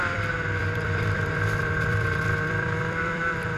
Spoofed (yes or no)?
yes